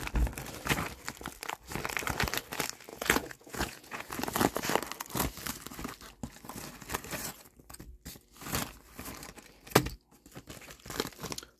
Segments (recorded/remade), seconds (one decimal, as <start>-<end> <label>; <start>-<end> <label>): 0.0-2.9 recorded; 2.9-4.1 remade; 4.1-11.6 recorded